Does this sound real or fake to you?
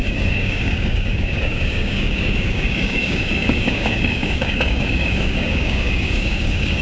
fake